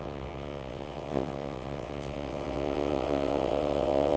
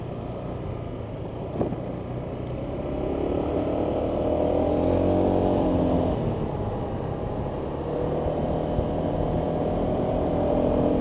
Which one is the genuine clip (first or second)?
second